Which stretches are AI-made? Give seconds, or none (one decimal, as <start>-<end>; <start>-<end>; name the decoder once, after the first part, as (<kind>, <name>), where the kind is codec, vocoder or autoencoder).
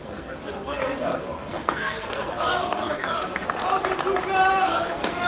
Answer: 0.0-3.6 (codec, SNAC); 4.5-5.3